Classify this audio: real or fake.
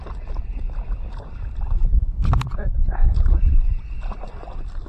real